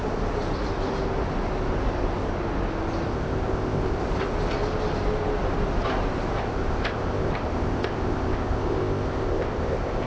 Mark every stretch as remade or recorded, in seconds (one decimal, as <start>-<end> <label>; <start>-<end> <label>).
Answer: 0.0-3.1 recorded; 3.1-4.0 remade; 4.0-6.4 recorded; 6.4-10.1 remade